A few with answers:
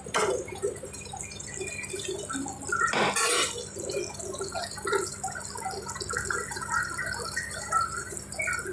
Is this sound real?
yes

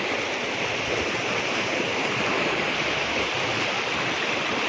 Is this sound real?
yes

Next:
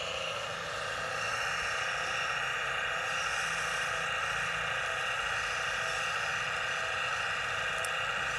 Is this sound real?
yes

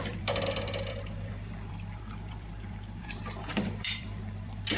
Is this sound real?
no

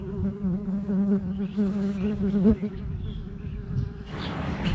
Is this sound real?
no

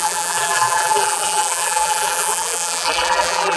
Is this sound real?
no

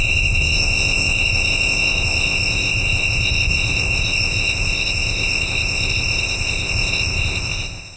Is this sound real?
no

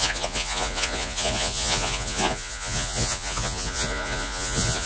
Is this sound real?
no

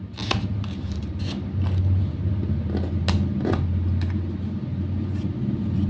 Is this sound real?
yes